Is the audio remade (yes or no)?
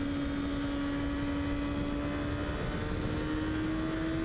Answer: no